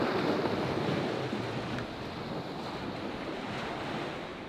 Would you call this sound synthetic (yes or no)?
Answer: no